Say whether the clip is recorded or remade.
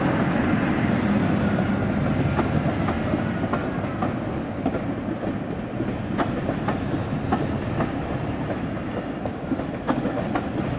recorded